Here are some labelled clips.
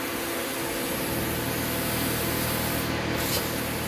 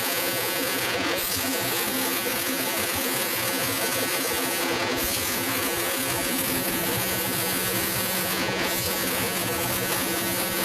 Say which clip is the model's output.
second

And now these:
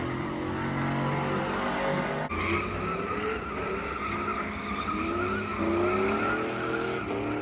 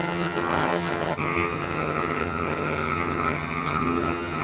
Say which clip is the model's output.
second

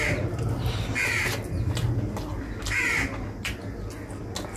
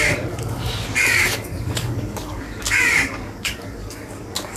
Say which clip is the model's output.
second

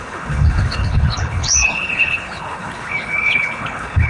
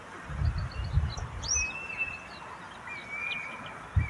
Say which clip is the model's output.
first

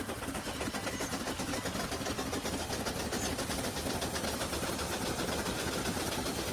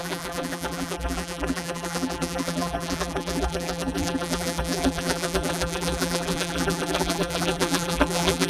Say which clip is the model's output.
second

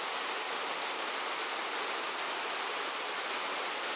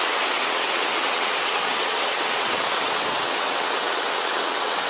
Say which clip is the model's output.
second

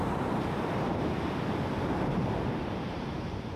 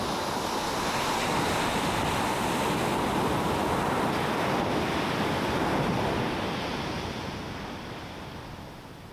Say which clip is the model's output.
first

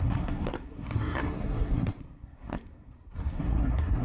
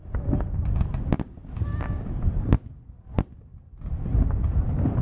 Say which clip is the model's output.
first